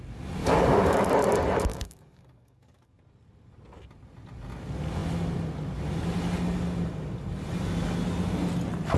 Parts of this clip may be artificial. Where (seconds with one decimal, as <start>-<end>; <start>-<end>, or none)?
0.4-1.1; 1.7-3.0